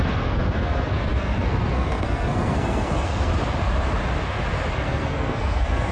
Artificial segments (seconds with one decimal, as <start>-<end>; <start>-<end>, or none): 0.0-3.3; 4.7-5.9